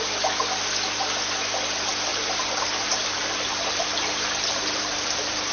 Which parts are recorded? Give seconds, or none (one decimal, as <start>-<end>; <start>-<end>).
0.0-2.1